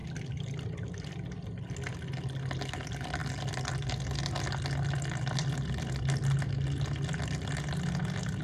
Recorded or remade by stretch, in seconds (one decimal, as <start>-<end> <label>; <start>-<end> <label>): 0.0-1.1 remade; 1.1-3.2 recorded; 3.2-3.9 remade; 3.9-8.4 recorded